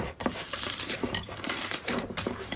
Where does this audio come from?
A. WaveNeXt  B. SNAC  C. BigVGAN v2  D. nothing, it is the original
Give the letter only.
C